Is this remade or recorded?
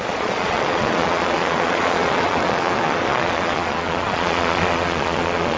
remade